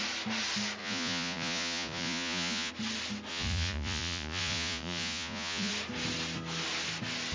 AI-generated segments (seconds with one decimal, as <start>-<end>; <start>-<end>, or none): 0.8-2.7; 3.3-5.7